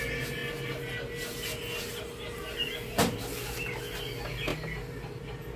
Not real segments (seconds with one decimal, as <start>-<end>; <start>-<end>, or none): none